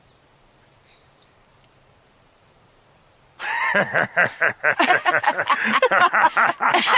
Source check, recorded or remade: remade